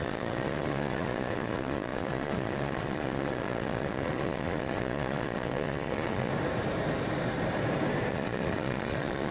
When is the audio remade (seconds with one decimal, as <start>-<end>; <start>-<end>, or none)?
0.0-6.3; 8.1-9.3